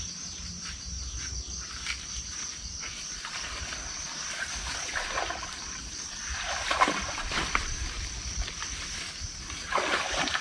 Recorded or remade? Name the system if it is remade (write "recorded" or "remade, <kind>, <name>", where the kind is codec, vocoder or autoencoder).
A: recorded